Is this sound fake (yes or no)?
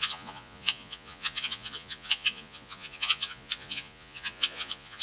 yes